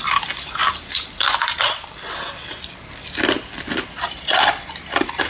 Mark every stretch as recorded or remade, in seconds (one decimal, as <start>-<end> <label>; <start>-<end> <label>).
0.0-5.3 recorded